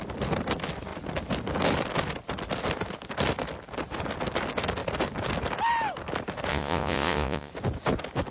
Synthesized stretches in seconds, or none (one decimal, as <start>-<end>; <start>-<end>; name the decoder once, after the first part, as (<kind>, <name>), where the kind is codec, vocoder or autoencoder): 6.5-7.5 (vocoder, Vocos)